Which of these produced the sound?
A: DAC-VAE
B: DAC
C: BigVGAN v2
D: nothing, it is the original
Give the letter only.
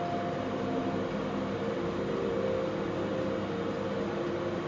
D